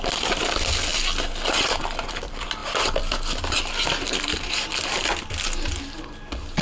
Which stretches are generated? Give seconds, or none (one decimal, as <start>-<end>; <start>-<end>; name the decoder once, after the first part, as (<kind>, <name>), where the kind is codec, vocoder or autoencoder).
0.0-0.9 (vocoder, BigVGAN v2); 1.8-2.6

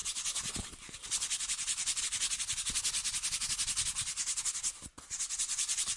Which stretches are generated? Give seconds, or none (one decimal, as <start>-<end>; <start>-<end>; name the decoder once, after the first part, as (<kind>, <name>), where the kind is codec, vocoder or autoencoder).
none